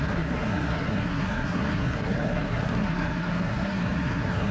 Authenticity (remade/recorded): remade